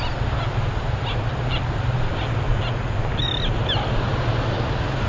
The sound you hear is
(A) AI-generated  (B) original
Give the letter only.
B